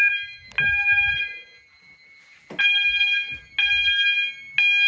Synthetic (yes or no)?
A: no